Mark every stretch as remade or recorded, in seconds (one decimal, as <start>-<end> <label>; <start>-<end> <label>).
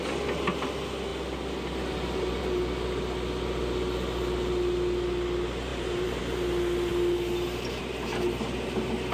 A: 0.0-5.7 recorded; 5.7-6.2 remade; 6.2-9.1 recorded